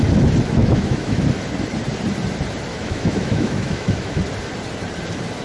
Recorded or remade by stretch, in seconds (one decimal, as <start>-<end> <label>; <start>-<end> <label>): 0.0-0.6 recorded; 0.6-1.2 remade; 1.2-2.7 recorded; 2.7-4.2 remade; 4.2-5.4 recorded